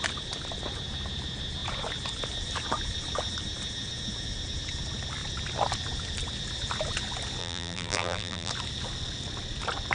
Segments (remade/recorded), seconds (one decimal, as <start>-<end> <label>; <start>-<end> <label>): 0.0-7.4 recorded; 7.4-8.5 remade; 8.5-9.9 recorded

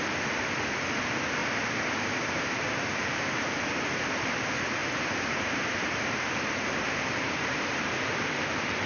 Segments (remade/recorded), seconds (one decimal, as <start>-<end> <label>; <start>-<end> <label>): 0.0-4.8 recorded; 4.8-8.9 remade

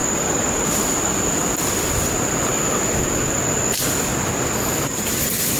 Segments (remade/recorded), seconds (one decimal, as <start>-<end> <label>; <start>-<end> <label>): 0.0-5.6 recorded

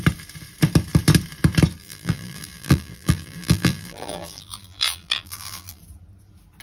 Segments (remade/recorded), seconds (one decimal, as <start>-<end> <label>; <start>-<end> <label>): 0.0-1.8 recorded; 1.8-5.8 remade; 5.8-6.6 recorded